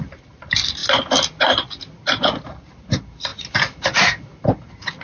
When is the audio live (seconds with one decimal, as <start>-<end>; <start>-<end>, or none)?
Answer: 0.0-5.0

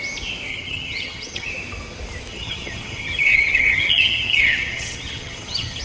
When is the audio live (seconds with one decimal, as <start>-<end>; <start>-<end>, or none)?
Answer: 0.0-0.5; 1.5-2.3